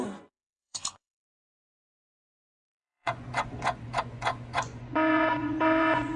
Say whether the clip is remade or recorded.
remade